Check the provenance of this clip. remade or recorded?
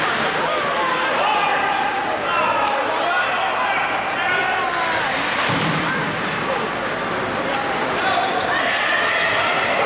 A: recorded